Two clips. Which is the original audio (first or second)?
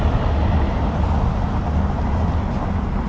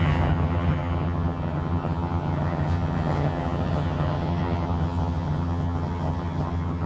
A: first